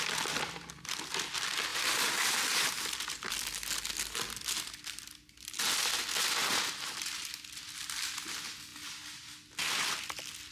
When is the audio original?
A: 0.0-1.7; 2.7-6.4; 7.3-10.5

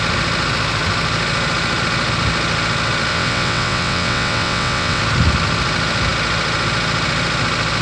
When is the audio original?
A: 0.0-3.1; 5.0-7.8

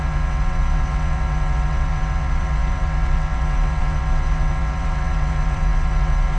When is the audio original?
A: none

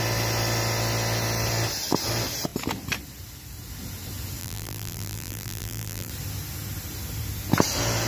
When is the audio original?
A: 0.0-4.4; 6.1-8.1

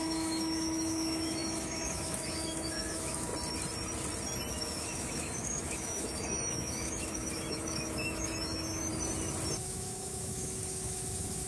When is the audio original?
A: 3.3-4.5; 8.9-9.6

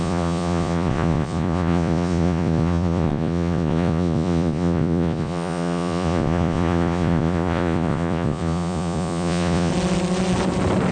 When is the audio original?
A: 9.7-10.9

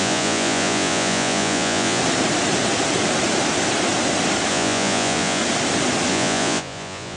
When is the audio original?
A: 2.0-4.5; 5.4-6.1

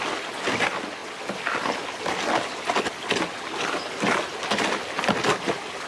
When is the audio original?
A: 0.0-5.9